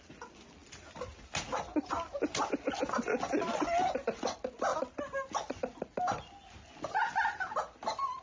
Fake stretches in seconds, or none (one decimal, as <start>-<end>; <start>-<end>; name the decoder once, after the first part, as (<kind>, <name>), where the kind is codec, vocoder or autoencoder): none